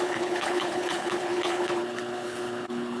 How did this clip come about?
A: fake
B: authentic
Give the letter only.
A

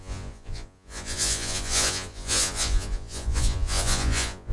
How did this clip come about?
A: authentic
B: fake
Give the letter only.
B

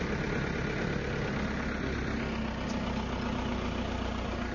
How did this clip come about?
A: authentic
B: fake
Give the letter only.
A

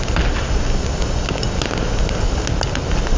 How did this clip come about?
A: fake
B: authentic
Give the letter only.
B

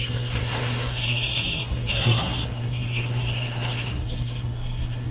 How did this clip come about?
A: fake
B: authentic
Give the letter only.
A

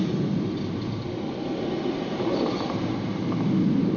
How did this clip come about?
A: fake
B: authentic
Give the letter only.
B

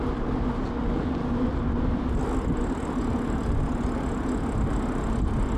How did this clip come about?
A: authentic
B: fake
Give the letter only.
A